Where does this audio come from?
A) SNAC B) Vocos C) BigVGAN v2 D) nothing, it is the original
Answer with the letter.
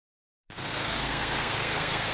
A